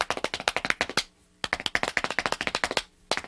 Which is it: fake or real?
real